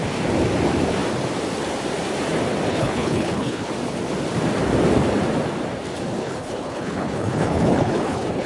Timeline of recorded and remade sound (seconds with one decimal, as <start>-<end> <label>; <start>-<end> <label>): 0.0-2.7 recorded; 2.7-3.7 remade; 3.7-6.2 recorded; 6.2-8.5 remade